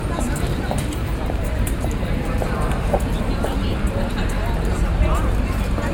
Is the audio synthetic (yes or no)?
yes